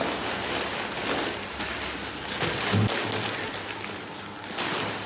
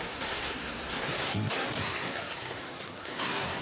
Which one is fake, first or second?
second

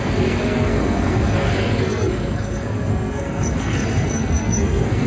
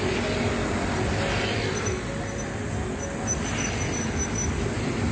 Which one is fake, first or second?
first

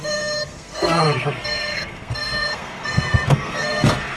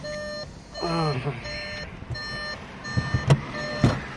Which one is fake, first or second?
first